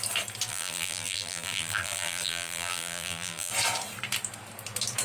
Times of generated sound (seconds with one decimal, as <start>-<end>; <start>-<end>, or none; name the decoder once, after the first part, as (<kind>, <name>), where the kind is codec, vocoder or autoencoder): 0.5-3.5 (vocoder, BigVGAN v2)